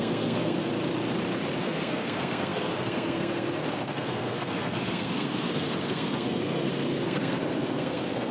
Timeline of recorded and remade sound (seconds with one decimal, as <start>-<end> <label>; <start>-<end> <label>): 0.0-0.7 remade; 0.7-1.6 recorded; 1.6-8.3 remade